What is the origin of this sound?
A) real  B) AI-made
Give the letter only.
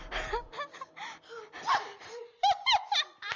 A